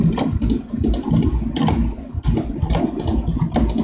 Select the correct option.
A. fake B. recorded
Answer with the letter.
B